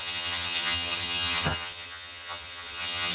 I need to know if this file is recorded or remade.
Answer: remade